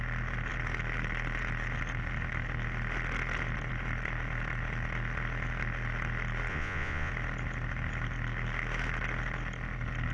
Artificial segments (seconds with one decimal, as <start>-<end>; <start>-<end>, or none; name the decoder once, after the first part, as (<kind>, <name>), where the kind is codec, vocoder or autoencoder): 6.5-7.1 (vocoder, Vocos)